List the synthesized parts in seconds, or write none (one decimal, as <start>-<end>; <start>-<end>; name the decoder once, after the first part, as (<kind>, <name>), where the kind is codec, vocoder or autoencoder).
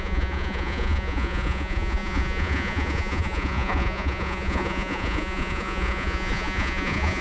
0.0-7.2 (vocoder, Vocos)